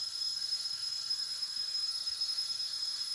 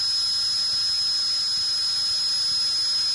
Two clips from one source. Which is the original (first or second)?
second